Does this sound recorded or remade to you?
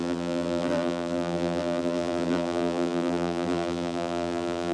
remade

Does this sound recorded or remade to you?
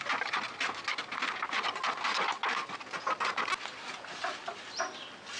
recorded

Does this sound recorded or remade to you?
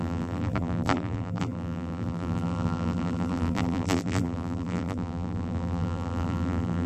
remade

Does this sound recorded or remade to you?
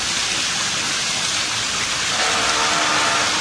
recorded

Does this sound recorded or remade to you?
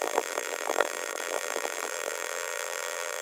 remade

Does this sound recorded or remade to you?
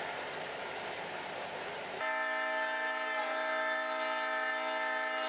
recorded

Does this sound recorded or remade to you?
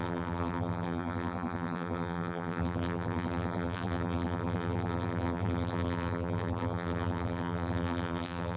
remade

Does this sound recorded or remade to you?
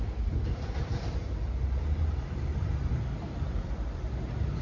remade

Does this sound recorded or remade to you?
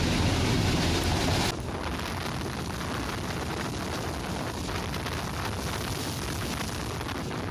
recorded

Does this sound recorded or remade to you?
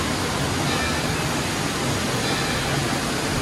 recorded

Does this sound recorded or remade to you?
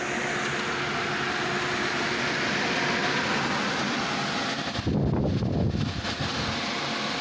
recorded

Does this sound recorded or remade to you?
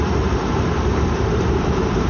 remade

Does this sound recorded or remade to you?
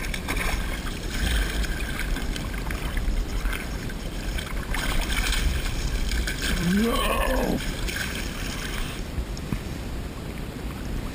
remade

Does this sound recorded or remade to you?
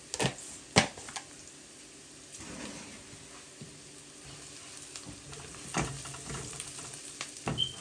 recorded